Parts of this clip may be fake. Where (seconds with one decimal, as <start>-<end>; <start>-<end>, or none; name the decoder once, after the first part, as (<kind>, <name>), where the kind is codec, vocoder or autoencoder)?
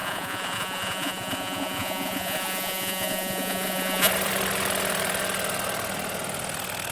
0.0-4.1 (vocoder, Vocos)